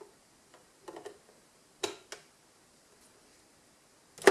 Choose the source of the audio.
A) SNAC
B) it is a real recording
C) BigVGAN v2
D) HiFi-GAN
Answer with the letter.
B